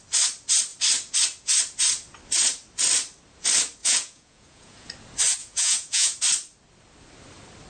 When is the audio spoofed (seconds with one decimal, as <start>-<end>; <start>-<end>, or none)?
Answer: 3.8-4.9; 5.4-6.2